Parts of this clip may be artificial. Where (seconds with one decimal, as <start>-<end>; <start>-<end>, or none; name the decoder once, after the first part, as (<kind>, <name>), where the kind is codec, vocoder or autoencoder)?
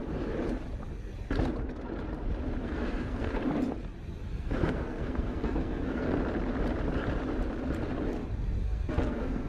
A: 2.6-3.3 (codec, SNAC); 4.3-6.2; 8.6-9.5